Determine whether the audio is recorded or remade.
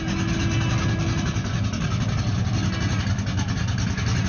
recorded